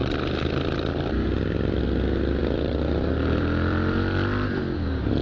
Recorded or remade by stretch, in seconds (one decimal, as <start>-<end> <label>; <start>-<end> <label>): 0.0-1.8 remade; 1.8-2.4 recorded; 2.4-4.6 remade; 4.6-5.2 recorded